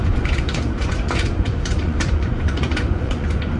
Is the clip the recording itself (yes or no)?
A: no